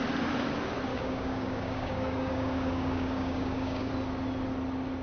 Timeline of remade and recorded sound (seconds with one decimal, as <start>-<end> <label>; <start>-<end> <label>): 0.0-0.9 recorded; 0.9-3.9 remade; 3.9-5.0 recorded